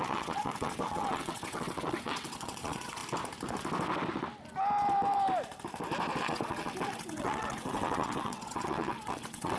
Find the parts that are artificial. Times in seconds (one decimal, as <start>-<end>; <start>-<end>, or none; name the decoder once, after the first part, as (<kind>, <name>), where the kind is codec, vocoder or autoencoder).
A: 0.0-3.0 (vocoder, WaveNeXt); 6.2-9.6